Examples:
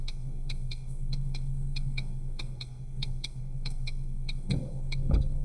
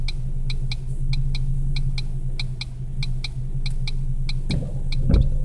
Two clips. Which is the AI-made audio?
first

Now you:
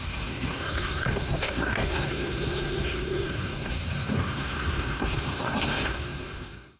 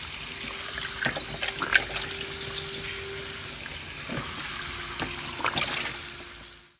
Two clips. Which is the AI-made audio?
first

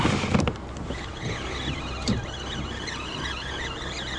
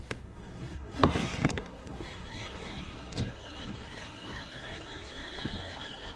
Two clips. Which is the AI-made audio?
second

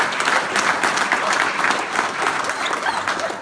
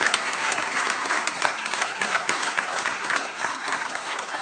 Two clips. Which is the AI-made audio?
second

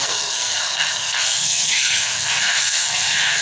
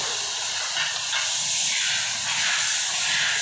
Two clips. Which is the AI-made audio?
first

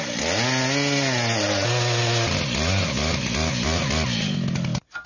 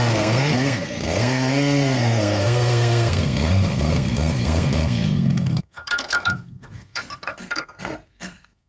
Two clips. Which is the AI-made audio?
second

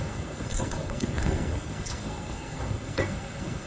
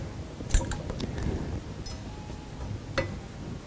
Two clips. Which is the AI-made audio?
first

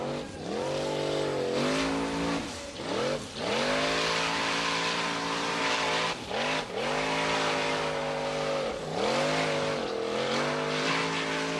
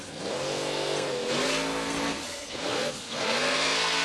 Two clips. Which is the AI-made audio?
second